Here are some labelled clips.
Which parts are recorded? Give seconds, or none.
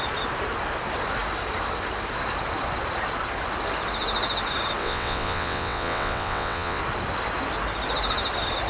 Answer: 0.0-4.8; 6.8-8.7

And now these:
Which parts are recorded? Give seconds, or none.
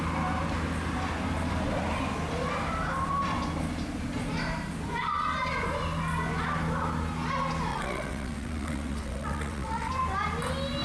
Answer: 0.0-7.7; 9.9-10.8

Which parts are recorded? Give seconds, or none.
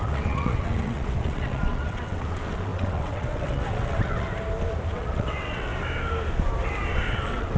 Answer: 4.3-4.9; 5.7-7.1